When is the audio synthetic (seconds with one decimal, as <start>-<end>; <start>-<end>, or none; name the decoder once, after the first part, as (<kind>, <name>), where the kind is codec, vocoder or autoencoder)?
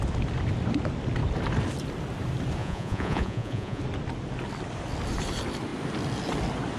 2.6-3.8 (vocoder, Vocos)